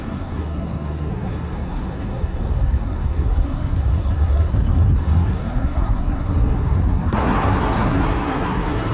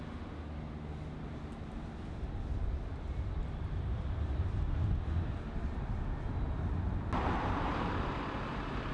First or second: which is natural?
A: second